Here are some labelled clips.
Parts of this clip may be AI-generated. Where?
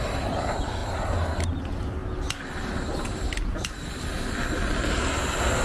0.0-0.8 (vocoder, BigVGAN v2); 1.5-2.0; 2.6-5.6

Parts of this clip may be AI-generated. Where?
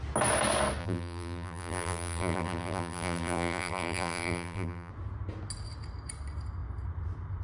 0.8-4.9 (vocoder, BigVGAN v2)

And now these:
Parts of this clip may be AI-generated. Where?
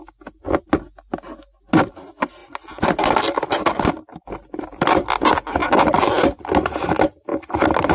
none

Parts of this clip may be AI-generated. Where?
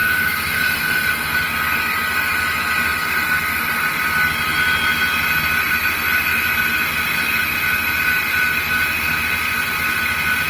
0.0-1.1 (vocoder, BigVGAN v2)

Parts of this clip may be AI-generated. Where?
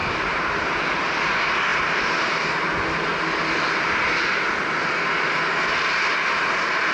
0.0-1.1 (vocoder, BigVGAN v2); 1.7-2.6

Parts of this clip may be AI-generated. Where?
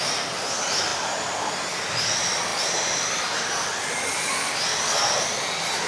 2.5-4.8 (vocoder, BigVGAN v2)